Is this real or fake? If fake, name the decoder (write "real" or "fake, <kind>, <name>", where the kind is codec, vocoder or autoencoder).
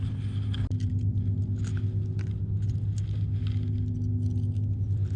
real